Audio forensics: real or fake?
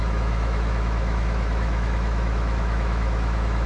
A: fake